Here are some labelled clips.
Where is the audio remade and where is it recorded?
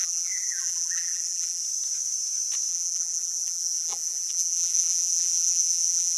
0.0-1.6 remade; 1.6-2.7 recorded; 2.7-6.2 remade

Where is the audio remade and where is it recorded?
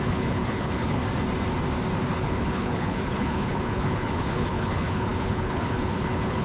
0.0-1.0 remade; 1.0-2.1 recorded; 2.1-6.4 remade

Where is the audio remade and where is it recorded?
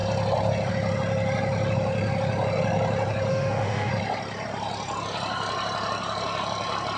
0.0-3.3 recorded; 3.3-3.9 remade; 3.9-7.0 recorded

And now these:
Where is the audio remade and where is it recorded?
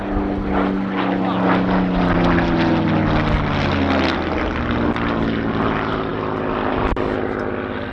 0.0-7.9 recorded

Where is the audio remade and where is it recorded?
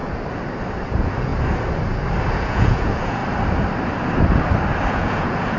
0.0-0.9 recorded; 0.9-1.3 remade; 1.3-2.3 recorded; 2.3-3.2 remade; 3.2-4.9 recorded; 4.9-5.6 remade